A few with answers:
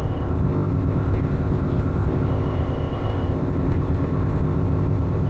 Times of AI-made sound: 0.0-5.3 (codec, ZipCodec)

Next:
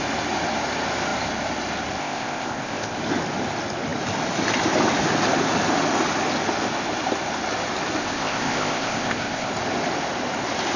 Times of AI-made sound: 2.0-3.0 (codec, ZipCodec); 8.0-9.5

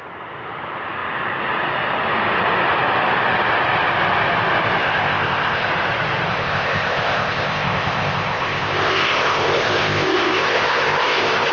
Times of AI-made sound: 4.8-5.7 (codec, ZipCodec); 6.3-11.5

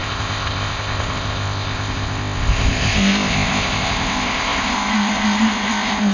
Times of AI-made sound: 0.0-6.1 (codec, ZipCodec)

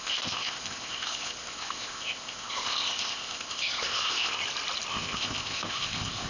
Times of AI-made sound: 0.0-4.4 (codec, ZipCodec); 4.9-6.3

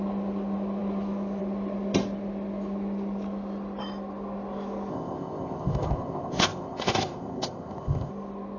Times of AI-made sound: 4.9-8.1 (codec, ZipCodec)

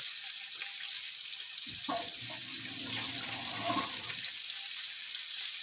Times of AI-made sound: none